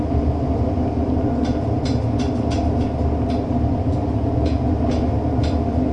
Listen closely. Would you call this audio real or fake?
real